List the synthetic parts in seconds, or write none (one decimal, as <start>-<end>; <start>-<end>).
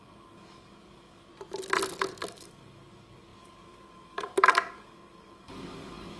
0.0-1.3; 2.3-6.2